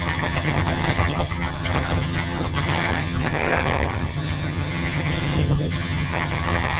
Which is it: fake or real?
fake